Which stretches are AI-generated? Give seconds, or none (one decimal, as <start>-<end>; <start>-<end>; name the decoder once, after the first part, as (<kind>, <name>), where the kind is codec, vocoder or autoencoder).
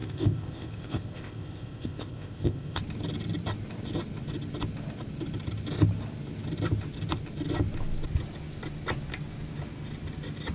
0.0-2.8 (codec, ZipCodec)